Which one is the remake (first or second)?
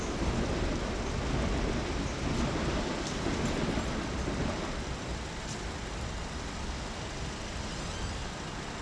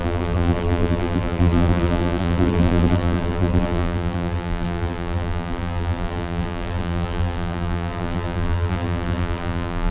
second